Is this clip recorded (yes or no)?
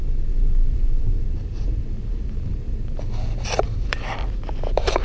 no